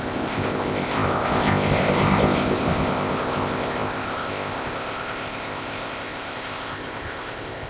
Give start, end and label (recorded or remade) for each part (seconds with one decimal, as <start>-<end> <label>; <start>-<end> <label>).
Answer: 0.0-7.7 remade

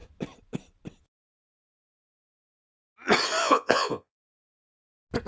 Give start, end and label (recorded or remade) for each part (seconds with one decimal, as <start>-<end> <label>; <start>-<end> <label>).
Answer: 0.0-1.0 recorded; 1.0-2.5 remade; 2.5-3.4 recorded; 3.4-4.3 remade; 4.3-5.3 recorded

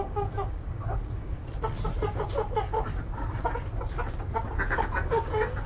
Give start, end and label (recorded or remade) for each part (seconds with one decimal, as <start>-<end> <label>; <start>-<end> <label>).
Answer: 0.0-1.4 remade; 1.4-4.7 recorded; 4.7-5.7 remade

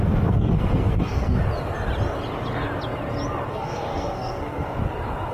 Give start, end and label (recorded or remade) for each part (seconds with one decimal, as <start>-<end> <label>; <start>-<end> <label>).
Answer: 0.0-1.4 remade; 1.4-3.5 recorded; 3.5-4.8 remade; 4.8-5.3 recorded